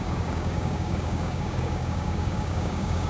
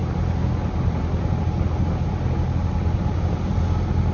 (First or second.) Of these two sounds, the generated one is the first